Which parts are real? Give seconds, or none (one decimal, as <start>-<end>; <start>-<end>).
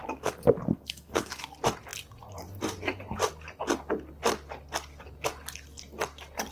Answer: 0.0-0.7; 1.4-6.5